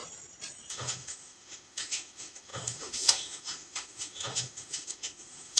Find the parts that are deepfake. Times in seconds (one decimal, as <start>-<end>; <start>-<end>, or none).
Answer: 0.7-5.6